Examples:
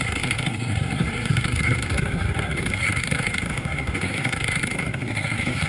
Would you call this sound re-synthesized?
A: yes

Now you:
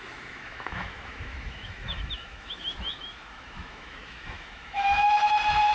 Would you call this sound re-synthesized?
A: yes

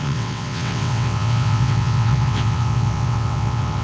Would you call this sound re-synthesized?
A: yes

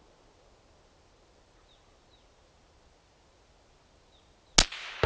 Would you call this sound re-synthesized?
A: no